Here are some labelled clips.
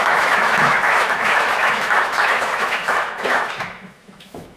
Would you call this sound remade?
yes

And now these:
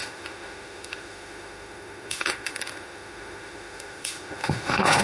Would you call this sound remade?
yes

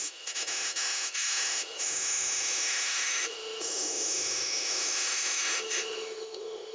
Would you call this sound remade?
yes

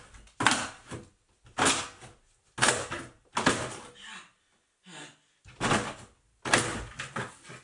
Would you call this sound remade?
no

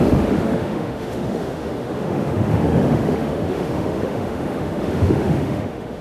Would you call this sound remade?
yes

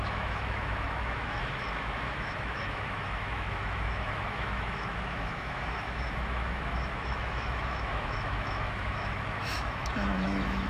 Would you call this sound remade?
yes